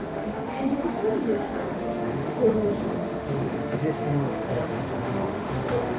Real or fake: fake